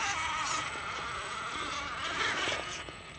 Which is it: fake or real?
fake